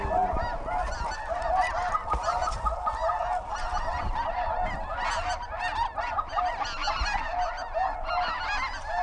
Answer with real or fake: real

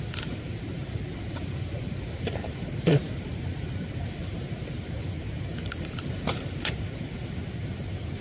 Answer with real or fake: fake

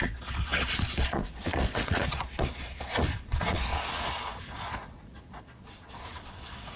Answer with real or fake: fake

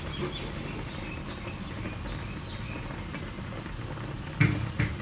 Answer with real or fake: real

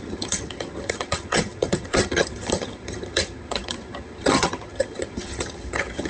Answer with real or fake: fake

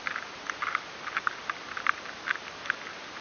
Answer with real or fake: real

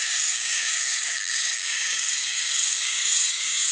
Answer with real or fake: fake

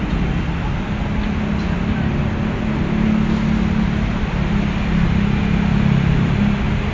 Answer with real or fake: real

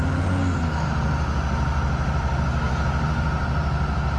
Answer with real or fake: real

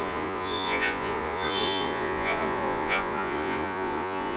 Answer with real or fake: fake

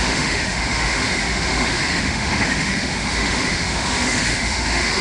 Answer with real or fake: fake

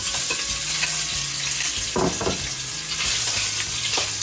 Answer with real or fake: real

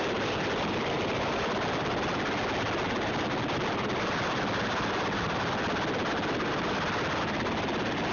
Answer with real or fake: real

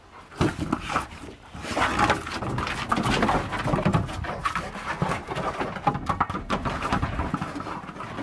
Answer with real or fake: real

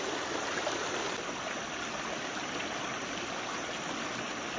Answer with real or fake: real